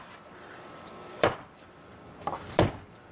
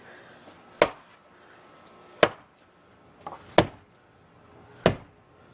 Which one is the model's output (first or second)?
first